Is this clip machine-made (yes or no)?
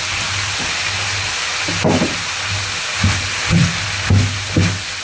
no